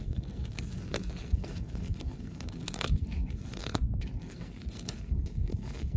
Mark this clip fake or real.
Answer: fake